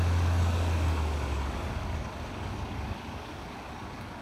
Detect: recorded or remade remade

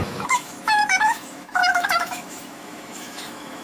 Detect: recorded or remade remade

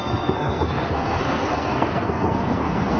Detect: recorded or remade remade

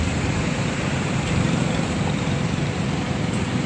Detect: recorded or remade remade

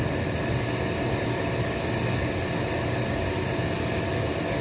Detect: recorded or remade recorded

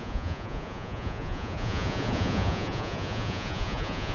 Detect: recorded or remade remade